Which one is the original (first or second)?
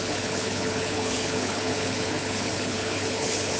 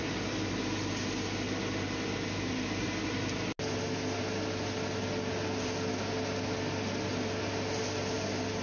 second